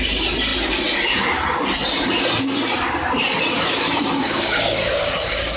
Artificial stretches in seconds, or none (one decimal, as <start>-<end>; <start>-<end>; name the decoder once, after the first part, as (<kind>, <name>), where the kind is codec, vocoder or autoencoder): 4.2-5.6 (codec, DAC)